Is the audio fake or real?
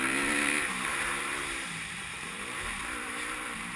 fake